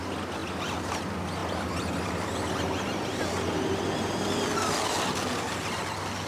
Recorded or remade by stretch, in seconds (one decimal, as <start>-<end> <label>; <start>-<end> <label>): 0.0-6.3 recorded